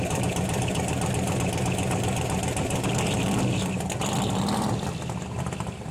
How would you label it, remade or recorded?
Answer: recorded